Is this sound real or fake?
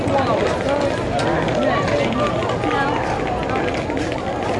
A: real